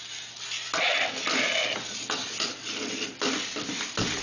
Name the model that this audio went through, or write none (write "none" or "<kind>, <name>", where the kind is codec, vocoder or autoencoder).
none